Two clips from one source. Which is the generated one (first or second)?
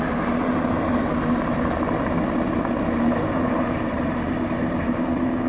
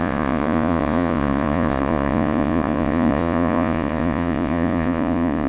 second